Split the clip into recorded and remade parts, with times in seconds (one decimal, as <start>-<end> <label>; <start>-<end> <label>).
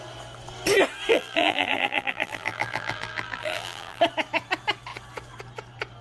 0.0-1.1 recorded; 1.1-4.0 remade; 4.0-6.0 recorded